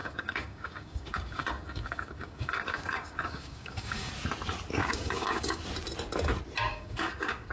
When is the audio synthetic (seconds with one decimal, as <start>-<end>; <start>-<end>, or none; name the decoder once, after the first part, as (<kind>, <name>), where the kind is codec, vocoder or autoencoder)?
0.0-4.1 (codec, DAC); 4.8-5.6; 6.7-7.5